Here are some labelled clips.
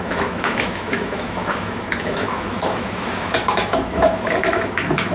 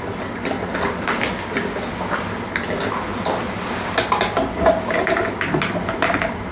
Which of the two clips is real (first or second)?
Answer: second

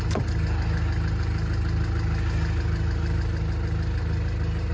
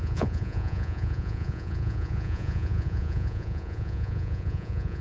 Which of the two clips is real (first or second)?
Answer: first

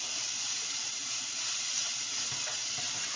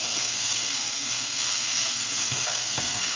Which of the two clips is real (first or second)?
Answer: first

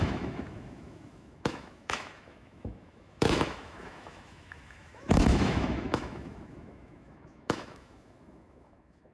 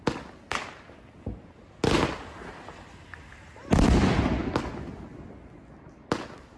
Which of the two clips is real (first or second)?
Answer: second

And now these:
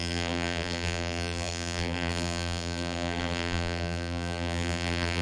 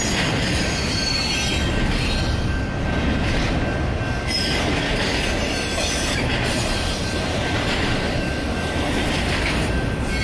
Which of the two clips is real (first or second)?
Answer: second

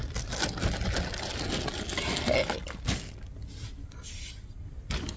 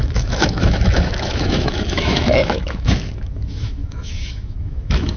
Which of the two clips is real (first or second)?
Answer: first